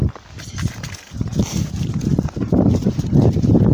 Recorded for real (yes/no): yes